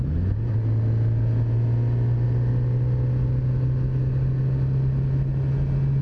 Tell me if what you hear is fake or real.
real